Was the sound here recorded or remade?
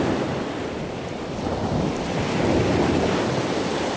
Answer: recorded